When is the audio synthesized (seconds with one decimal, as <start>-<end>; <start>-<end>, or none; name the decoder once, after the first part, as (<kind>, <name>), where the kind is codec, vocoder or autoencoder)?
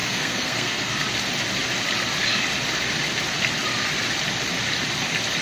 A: 0.0-0.9 (codec, SNAC)